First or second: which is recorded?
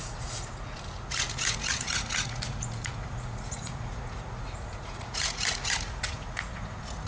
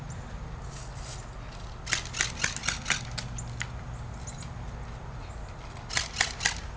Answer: second